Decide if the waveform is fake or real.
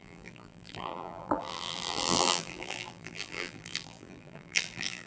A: fake